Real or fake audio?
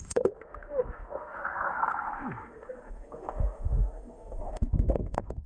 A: fake